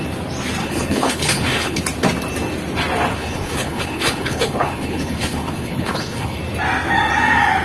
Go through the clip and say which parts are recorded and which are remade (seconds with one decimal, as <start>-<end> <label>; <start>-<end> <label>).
0.0-0.6 recorded; 0.6-1.8 remade; 1.8-3.1 recorded; 3.1-6.4 remade; 6.4-7.6 recorded